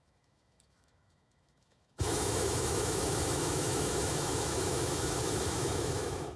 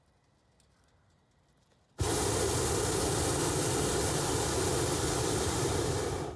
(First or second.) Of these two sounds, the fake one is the first